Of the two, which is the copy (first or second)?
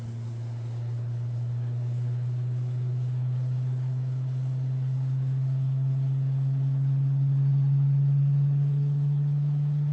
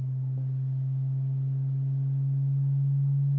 first